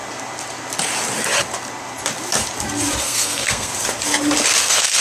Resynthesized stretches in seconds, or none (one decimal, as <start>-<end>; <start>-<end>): 3.0-3.7; 4.6-5.0